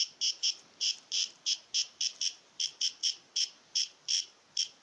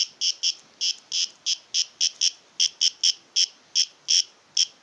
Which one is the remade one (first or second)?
first